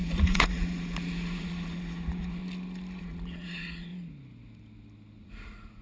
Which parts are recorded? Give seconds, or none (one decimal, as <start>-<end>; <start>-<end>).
2.4-3.0; 3.9-5.2